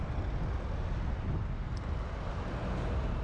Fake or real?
real